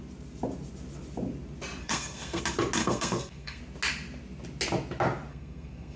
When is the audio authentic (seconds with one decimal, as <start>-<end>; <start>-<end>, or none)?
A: 0.0-1.8; 2.4-2.8; 3.6-5.3